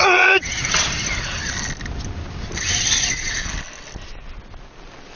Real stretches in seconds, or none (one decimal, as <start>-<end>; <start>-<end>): 0.7-5.2

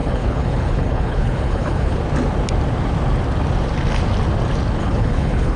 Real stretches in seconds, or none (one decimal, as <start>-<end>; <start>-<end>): 2.0-4.8

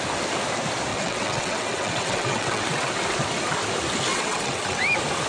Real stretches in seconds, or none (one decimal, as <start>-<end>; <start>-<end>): 0.0-0.9; 2.9-4.1; 4.8-5.3

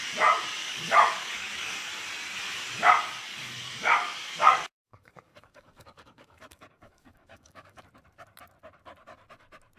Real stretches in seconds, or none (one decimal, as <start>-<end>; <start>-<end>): 0.0-0.6; 1.9-3.3; 7.8-9.8

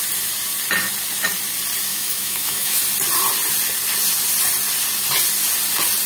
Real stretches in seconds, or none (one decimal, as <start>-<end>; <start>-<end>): 0.0-1.9; 2.8-6.1